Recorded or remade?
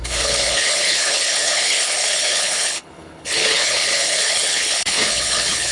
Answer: remade